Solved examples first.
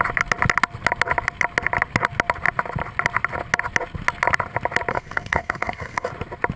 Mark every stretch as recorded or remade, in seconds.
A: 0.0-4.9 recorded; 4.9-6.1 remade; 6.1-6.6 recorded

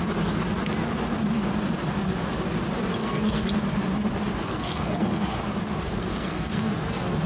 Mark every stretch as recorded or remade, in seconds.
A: 0.0-3.0 recorded; 3.0-3.5 remade; 3.5-4.4 recorded; 4.4-5.4 remade; 5.4-6.0 recorded; 6.0-6.7 remade; 6.7-7.3 recorded